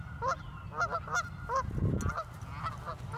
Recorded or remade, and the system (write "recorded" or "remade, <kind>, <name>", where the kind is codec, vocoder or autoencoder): recorded